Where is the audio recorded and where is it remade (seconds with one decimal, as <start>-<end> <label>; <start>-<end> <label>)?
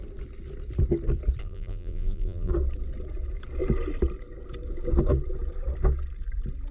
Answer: 0.0-1.4 recorded; 1.4-2.5 remade; 2.5-6.7 recorded